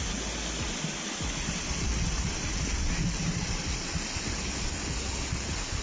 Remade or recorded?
recorded